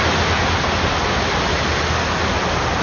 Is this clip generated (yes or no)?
no